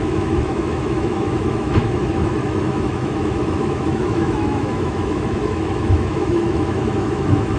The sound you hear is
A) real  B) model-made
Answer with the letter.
B